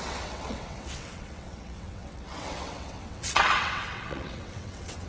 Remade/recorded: remade